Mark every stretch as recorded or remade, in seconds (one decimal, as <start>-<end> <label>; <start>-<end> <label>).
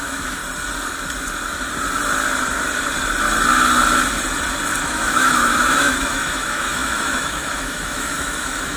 0.0-0.4 remade; 0.4-4.8 recorded; 4.8-8.8 remade